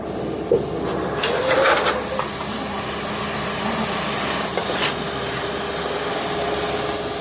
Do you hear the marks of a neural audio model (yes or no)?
no